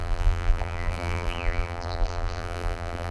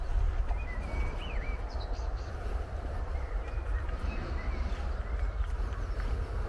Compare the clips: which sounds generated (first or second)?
first